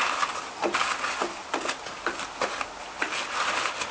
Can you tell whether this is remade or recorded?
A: recorded